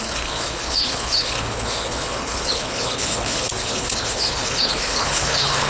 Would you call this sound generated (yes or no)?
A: yes